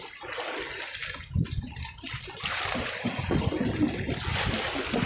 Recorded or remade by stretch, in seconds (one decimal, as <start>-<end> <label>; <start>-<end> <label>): 0.0-5.1 recorded